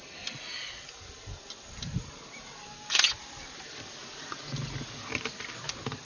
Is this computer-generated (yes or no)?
no